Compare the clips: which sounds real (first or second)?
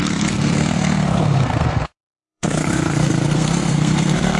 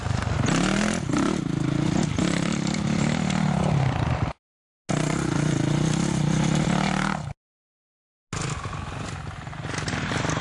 second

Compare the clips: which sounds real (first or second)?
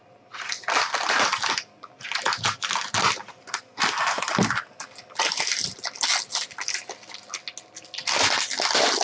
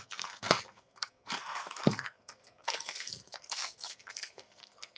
first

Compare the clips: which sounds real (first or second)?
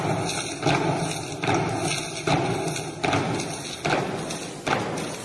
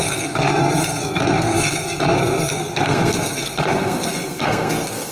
first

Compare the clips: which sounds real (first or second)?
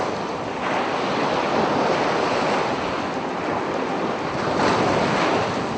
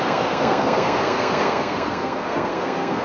first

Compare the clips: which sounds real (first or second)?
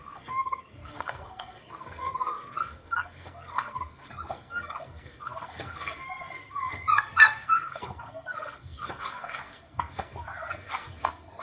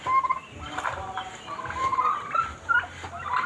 second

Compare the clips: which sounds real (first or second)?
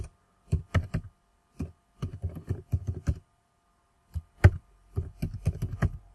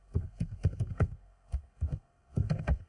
first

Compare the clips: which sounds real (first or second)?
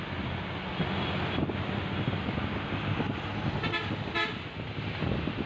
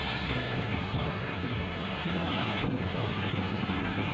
first